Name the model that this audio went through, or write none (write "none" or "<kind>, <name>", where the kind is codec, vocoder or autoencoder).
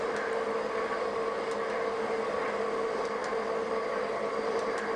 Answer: none